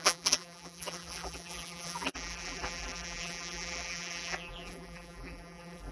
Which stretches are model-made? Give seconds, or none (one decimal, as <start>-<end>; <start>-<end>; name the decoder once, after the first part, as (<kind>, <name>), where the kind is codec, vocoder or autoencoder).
0.0-5.9 (vocoder, BigVGAN v2)